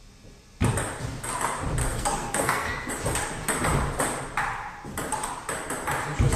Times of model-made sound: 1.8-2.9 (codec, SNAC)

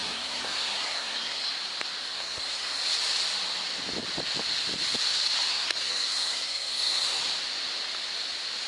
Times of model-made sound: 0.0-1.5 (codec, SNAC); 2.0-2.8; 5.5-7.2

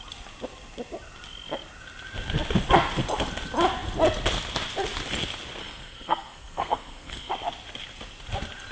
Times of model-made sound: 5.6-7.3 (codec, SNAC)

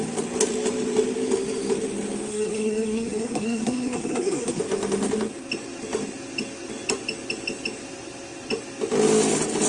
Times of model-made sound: 2.3-4.6 (codec, SNAC)

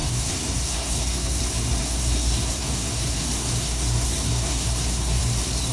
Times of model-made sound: 0.0-1.4 (codec, SNAC); 1.8-5.2